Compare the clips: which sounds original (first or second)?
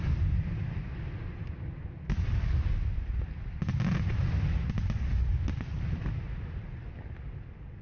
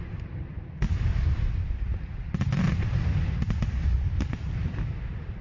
first